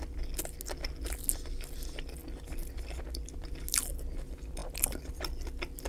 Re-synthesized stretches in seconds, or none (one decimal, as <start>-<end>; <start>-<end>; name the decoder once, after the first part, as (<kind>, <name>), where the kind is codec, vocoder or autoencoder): none